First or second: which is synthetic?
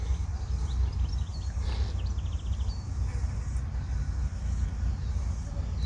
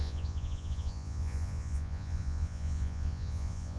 second